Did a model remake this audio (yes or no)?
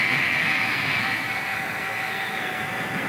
yes